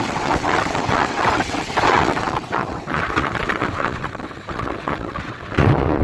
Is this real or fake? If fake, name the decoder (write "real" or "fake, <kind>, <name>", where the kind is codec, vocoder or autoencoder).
fake, vocoder, WaveNeXt